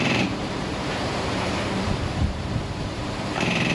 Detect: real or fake fake